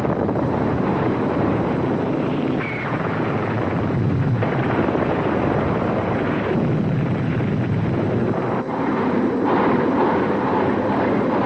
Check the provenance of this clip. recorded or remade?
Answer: remade